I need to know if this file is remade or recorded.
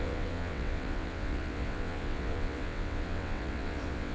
remade